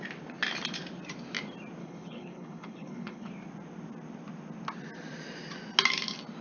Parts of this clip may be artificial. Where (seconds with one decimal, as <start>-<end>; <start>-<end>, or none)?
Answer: 1.8-3.3